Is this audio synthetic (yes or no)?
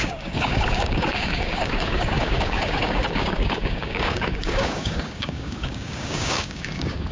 yes